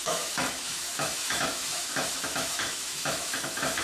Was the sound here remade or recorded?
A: remade